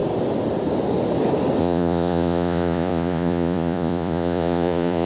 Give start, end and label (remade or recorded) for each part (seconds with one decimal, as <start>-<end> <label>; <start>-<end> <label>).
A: 0.0-1.6 recorded; 1.6-5.1 remade